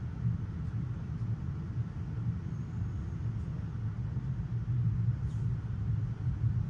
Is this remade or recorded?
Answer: recorded